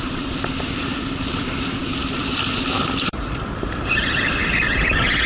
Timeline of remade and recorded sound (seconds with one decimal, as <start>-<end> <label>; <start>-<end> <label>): 0.0-5.3 remade